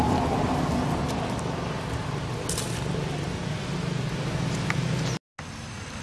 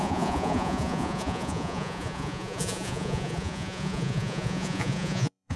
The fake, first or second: second